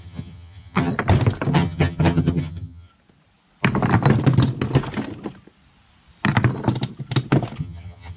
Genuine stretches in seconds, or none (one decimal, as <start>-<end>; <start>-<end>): 0.9-1.5; 2.9-7.6